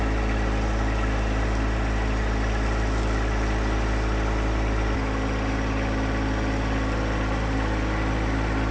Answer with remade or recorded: recorded